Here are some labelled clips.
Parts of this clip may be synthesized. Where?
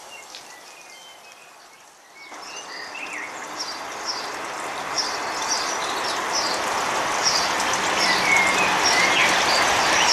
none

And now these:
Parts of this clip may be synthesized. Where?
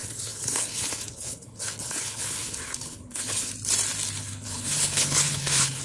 0.0-3.5 (codec, HILCodec); 4.2-5.8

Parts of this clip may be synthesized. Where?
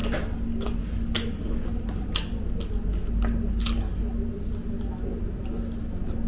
none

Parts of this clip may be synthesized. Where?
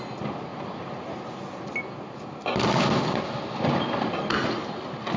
none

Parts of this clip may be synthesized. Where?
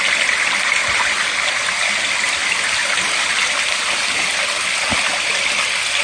none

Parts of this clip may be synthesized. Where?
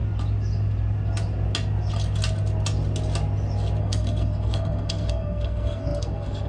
3.8-6.5 (codec, SNAC)